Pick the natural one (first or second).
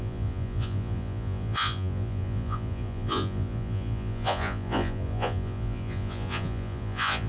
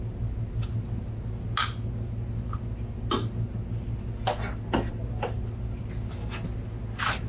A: second